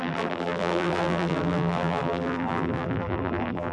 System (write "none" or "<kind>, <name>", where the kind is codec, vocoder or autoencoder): vocoder, BigVGAN v2